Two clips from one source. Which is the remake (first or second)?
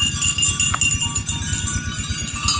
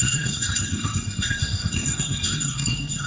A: second